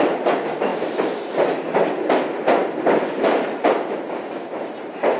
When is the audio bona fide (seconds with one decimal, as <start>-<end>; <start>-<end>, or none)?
0.0-0.7; 1.2-2.6; 3.1-5.2